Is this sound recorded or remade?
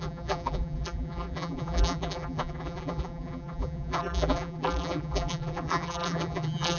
remade